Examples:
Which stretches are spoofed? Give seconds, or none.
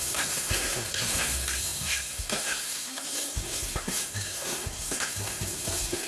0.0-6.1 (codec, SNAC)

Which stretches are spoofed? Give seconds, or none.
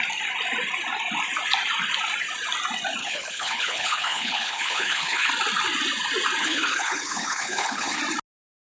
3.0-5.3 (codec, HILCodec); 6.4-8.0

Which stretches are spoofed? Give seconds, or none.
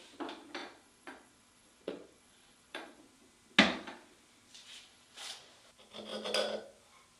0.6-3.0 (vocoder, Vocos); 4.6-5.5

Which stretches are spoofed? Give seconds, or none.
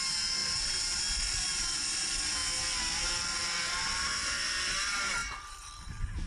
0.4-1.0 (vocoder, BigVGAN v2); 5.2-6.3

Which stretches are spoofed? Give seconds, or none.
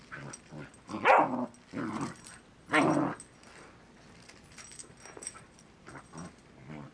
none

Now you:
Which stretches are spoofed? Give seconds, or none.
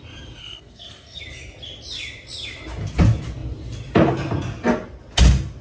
0.4-1.2 (codec, SNAC)